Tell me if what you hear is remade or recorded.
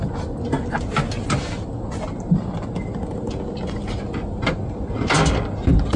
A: recorded